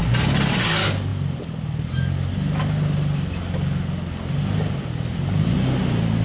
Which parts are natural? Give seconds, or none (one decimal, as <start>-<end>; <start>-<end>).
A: 0.0-6.2